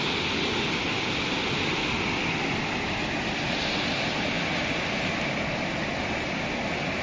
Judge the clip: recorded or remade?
recorded